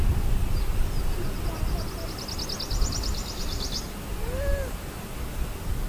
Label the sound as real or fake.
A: real